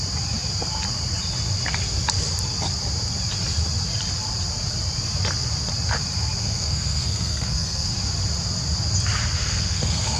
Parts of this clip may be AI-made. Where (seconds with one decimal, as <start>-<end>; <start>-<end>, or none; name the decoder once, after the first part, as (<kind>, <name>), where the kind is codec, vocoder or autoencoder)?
6.4-7.9 (codec, SNAC); 9.4-10.2

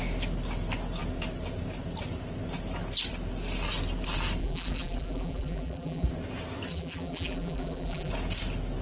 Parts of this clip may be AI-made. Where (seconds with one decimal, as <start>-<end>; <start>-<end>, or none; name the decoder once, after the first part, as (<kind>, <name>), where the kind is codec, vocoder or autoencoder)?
4.4-6.1 (vocoder, BigVGAN v2); 6.7-8.1